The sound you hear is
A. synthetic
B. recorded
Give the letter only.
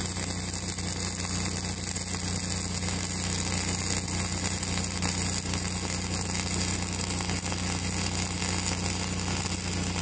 B